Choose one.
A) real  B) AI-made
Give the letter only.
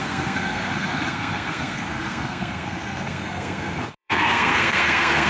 B